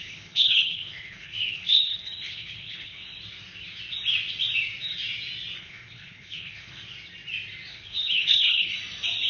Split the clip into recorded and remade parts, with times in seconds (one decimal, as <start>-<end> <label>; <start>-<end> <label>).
0.0-3.2 remade; 3.2-5.6 recorded; 5.6-6.8 remade; 6.8-7.7 recorded; 7.7-8.7 remade; 8.7-9.3 recorded